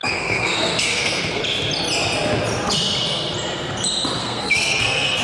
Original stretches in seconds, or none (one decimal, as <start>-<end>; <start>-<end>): 1.4-4.2